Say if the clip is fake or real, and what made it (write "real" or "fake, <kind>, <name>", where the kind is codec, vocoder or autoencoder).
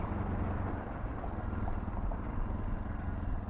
real